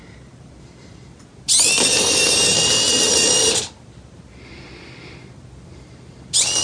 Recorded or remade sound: recorded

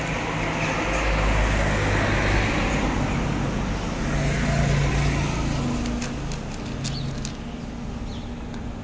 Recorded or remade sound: recorded